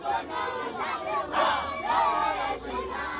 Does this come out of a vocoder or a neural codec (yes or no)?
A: no